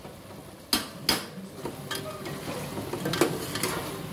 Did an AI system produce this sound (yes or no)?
no